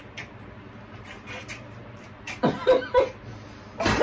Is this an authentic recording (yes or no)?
yes